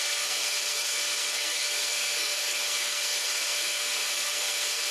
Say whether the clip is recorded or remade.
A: remade